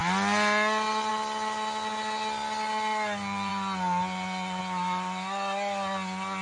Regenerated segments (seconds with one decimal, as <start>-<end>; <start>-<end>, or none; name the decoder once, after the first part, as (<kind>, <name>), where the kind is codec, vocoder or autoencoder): none